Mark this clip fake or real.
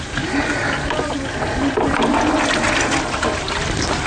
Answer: real